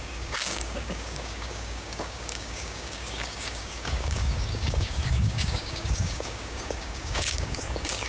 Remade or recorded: remade